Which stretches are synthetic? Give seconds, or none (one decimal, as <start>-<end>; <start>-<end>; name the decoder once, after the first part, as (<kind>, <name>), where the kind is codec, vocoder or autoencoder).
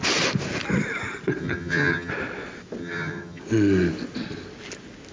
1.4-2.1 (vocoder, HiFi-GAN); 2.8-3.4